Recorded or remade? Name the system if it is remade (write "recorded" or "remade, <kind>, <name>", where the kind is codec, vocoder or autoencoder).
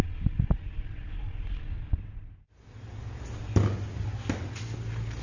recorded